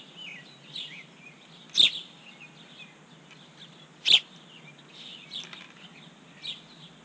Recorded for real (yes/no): yes